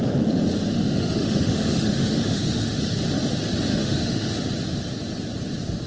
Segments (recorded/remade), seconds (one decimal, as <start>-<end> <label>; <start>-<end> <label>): 0.0-0.7 recorded; 0.7-2.8 remade; 2.8-3.7 recorded; 3.7-4.3 remade; 4.3-5.9 recorded